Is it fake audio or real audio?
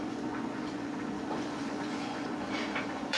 fake